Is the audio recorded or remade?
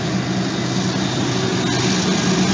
recorded